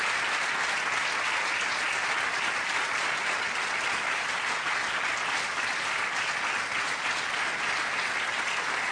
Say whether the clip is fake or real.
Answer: real